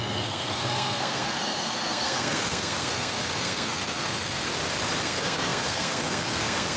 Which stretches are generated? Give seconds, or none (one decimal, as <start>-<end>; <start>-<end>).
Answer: 0.0-4.5; 5.0-6.8